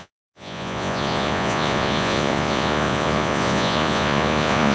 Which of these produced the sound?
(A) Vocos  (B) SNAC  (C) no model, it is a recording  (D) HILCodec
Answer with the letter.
A